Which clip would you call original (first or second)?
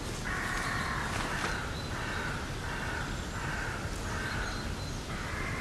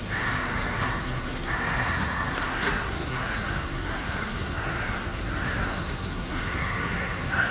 first